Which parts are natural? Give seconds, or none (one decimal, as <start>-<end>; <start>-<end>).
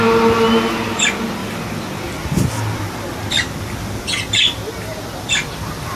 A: 0.0-6.0